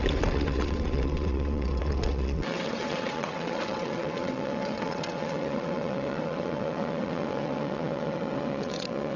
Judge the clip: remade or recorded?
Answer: remade